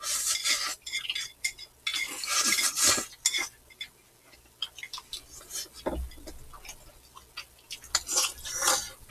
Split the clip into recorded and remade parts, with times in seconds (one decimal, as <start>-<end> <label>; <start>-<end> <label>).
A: 0.0-9.1 recorded